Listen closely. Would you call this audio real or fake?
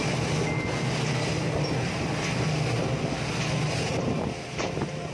real